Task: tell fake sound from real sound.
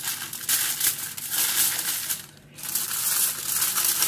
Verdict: real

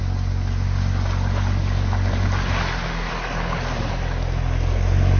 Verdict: real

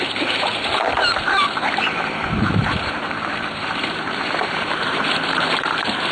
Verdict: fake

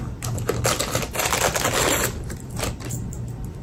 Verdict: real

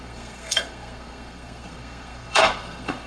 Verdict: fake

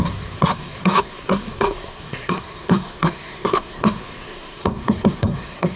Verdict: fake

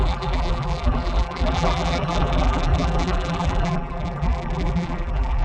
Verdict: fake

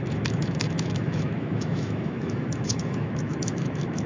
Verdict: fake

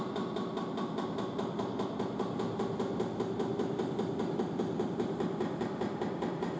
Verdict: real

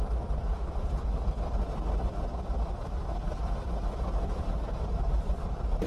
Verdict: fake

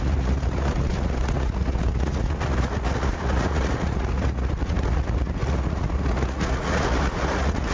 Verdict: fake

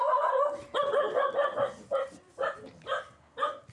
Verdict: real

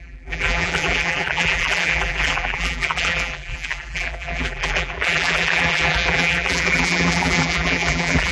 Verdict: fake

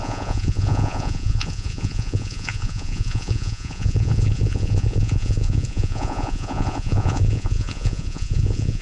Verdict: fake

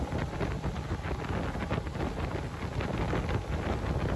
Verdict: real